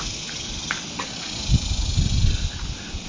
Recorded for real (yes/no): yes